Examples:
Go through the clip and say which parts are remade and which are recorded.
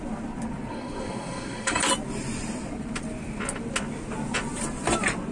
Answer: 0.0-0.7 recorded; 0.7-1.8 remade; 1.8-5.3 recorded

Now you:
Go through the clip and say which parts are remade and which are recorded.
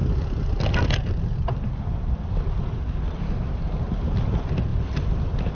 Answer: 0.0-3.0 remade; 3.0-4.7 recorded; 4.7-5.5 remade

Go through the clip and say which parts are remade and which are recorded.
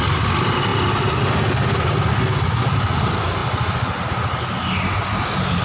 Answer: 0.0-5.6 recorded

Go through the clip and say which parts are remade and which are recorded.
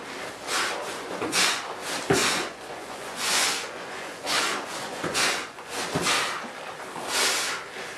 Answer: 0.0-0.9 recorded; 0.9-1.7 remade; 1.7-2.2 recorded; 2.2-5.8 remade; 5.8-8.0 recorded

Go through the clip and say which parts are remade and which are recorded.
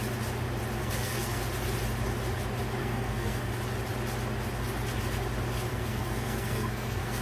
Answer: 0.0-0.8 recorded; 0.8-1.4 remade; 1.4-2.8 recorded; 2.8-3.5 remade; 3.5-5.7 recorded; 5.7-7.2 remade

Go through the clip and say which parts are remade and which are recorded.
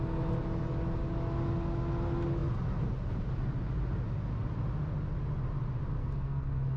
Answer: 0.0-6.0 recorded; 6.0-6.8 remade